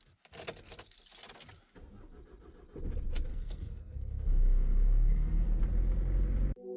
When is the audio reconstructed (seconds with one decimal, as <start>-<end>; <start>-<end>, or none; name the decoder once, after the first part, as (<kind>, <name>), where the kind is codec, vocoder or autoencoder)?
3.3-5.6 (codec, SNAC)